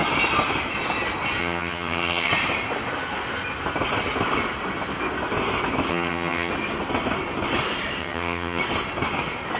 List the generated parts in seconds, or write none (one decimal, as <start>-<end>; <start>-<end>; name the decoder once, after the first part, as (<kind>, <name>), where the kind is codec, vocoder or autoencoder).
1.4-2.3 (vocoder, HiFi-GAN); 5.9-6.5; 8.0-8.6

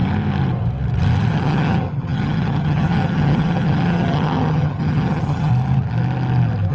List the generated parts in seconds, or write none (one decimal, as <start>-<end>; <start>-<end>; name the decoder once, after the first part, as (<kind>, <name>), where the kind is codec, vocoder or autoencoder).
1.3-5.5 (vocoder, HiFi-GAN)

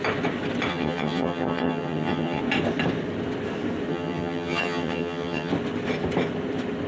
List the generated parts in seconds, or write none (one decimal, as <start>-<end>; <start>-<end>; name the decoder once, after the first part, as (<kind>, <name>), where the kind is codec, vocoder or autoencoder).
0.7-2.4 (vocoder, HiFi-GAN); 3.9-5.5